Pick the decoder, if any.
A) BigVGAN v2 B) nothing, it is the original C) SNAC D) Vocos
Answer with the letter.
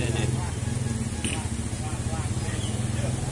B